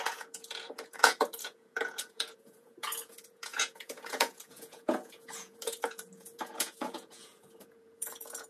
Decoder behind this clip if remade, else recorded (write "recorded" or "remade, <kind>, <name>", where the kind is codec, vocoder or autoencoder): remade, vocoder, Vocos